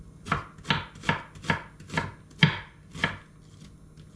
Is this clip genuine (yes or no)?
yes